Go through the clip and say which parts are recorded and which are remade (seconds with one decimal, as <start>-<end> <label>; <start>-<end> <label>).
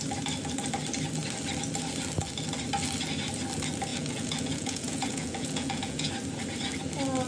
0.0-3.9 recorded; 3.9-6.1 remade; 6.1-7.3 recorded